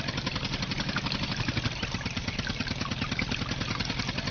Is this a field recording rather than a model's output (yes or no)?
yes